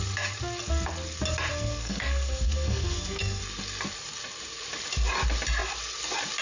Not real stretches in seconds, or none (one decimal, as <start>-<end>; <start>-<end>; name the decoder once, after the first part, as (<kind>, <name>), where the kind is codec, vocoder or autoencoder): 1.5-3.4 (codec, SNAC)